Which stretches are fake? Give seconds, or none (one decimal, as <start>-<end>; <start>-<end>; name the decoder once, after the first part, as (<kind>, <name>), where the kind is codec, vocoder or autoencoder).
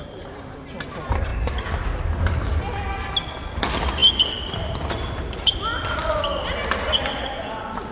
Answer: none